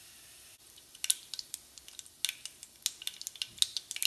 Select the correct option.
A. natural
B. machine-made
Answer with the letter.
A